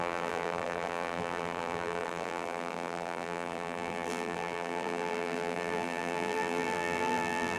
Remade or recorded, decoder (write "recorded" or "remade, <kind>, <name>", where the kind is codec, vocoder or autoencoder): remade, vocoder, BigVGAN v2